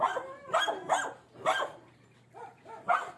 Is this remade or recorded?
recorded